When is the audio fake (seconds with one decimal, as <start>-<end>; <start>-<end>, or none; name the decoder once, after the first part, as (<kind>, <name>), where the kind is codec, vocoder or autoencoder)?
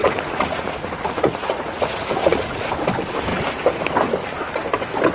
0.0-2.7 (vocoder, Vocos)